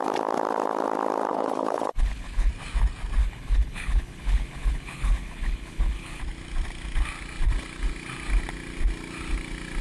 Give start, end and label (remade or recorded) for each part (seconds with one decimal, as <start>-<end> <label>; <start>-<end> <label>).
0.0-1.3 recorded; 1.3-2.5 remade; 2.5-3.2 recorded; 3.2-6.2 remade; 6.2-9.8 recorded